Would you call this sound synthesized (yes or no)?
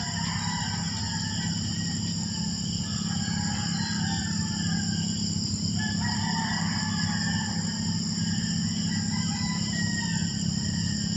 no